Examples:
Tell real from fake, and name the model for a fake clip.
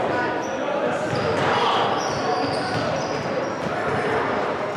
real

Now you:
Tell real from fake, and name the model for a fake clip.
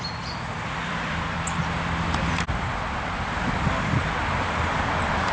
fake, vocoder, BigVGAN v2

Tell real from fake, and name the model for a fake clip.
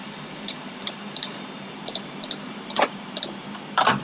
fake, vocoder, BigVGAN v2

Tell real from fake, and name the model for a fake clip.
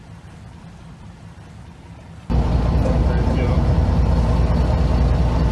real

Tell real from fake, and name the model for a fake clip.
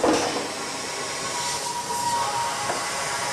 real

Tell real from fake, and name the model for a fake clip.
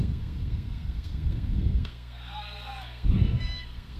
fake, codec, SNAC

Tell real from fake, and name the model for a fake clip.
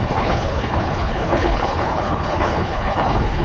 fake, codec, HILCodec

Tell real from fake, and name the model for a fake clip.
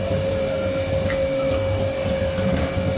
real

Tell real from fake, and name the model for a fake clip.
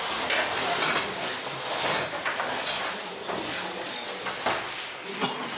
real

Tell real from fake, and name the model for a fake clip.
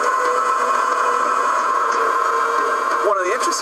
fake, vocoder, Vocos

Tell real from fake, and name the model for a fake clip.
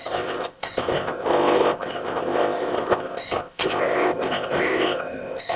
fake, codec, ZipCodec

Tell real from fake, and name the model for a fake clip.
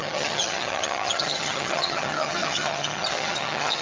fake, vocoder, HiFi-GAN